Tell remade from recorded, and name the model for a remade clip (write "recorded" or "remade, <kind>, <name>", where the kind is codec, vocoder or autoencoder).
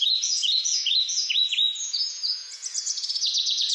remade, vocoder, Vocos